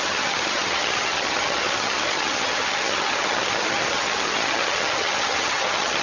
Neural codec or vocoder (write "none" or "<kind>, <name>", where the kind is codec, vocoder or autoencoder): vocoder, HiFi-GAN